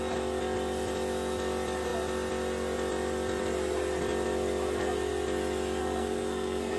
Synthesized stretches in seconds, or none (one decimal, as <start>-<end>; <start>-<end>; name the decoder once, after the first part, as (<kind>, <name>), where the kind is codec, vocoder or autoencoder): 5.8-6.8 (codec, SNAC)